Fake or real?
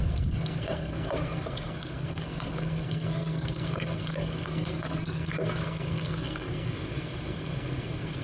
fake